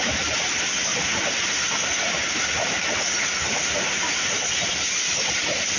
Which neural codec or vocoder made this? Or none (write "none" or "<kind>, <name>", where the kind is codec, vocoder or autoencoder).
none